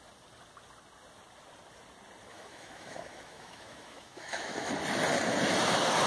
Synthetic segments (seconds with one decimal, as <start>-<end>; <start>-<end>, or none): 2.3-4.7

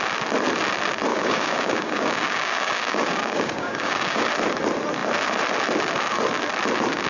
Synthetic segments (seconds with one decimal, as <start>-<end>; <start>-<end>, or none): 1.1-4.3

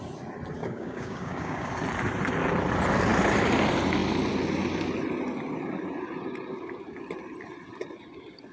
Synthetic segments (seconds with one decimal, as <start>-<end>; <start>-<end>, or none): 0.6-1.7

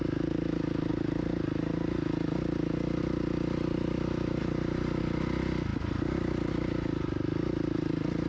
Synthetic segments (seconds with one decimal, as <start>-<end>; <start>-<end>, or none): 4.4-5.0

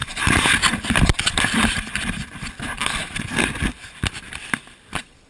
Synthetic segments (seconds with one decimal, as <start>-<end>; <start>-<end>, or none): 0.0-5.3

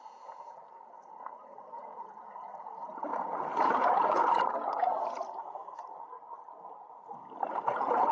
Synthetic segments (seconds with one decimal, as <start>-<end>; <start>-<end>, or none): 0.0-5.6; 7.5-8.1

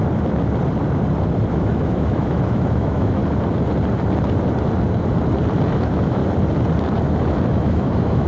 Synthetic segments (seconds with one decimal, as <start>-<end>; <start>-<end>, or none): 1.5-3.2; 5.7-6.2; 7.5-8.3

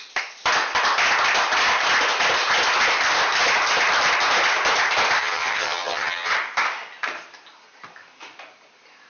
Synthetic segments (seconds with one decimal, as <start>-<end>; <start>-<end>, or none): 5.2-6.3